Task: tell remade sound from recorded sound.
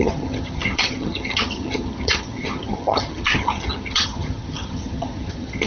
remade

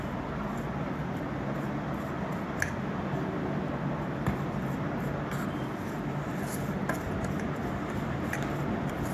recorded